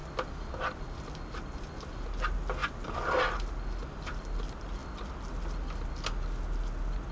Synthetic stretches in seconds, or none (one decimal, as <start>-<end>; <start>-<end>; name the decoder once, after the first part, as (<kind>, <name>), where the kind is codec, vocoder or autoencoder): none